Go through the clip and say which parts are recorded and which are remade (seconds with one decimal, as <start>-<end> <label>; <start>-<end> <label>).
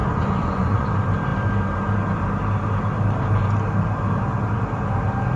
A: 0.0-0.9 remade; 0.9-5.4 recorded